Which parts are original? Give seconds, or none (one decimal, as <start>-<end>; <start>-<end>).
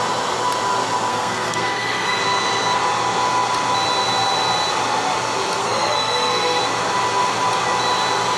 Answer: 0.0-1.1; 2.2-5.6; 6.6-8.4